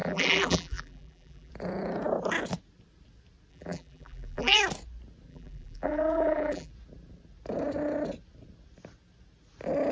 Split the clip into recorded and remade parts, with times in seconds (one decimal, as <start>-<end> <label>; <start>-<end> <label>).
0.0-1.5 remade; 1.5-3.5 recorded; 3.5-4.6 remade; 4.6-5.3 recorded; 5.3-6.7 remade; 6.7-9.9 recorded